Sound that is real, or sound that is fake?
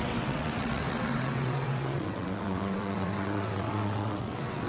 fake